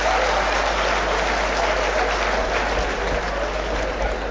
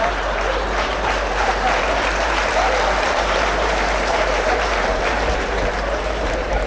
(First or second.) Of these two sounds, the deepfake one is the second